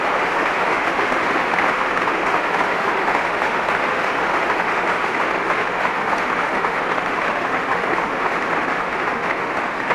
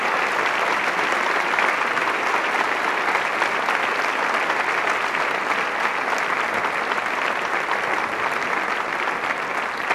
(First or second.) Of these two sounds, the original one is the second